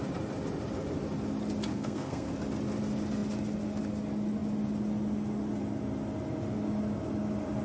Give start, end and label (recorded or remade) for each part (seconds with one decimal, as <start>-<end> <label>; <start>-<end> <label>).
0.0-1.7 recorded; 1.7-2.3 remade; 2.3-7.6 recorded